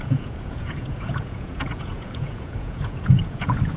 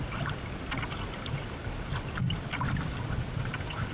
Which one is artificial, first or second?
first